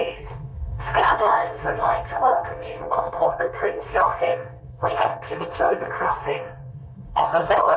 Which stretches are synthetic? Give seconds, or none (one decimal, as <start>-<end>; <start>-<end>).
0.0-7.8